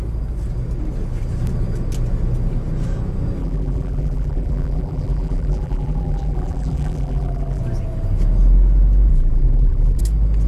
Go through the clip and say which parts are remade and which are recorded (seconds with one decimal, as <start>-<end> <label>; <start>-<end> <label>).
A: 0.0-3.4 recorded; 3.4-7.6 remade; 7.6-9.1 recorded; 9.1-10.0 remade; 10.0-10.5 recorded